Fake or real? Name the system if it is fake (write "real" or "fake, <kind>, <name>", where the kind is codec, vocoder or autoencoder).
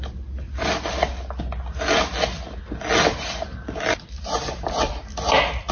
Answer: real